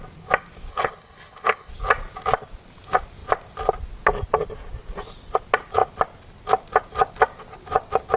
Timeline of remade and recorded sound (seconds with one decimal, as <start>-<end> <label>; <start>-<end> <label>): 0.0-0.7 recorded; 0.7-1.7 remade; 1.7-8.2 recorded